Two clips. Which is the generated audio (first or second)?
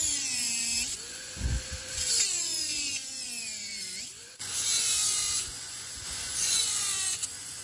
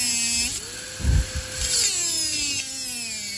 first